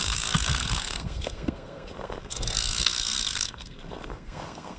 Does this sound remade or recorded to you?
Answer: remade